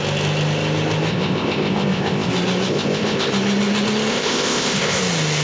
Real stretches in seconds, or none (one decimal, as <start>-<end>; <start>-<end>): 0.0-1.1; 2.3-2.7; 3.3-4.1; 5.0-5.4